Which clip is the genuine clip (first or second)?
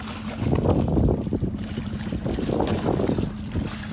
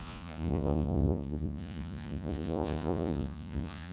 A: first